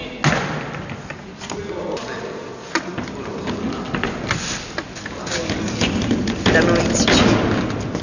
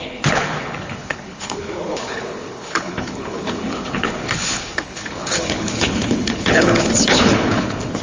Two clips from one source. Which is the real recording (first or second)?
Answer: first